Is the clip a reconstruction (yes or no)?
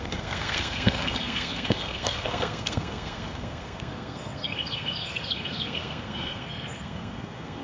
yes